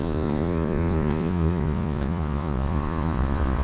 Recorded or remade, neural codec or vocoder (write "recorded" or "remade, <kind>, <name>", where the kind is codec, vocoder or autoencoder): remade, vocoder, Vocos